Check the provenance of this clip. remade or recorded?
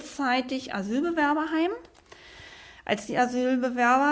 recorded